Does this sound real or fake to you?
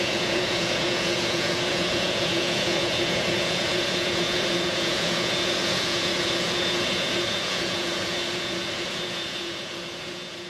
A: fake